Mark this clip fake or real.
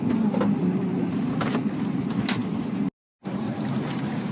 real